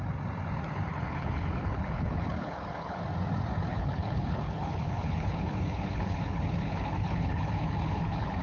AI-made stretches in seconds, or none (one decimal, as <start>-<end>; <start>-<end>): 0.9-3.0; 3.7-8.4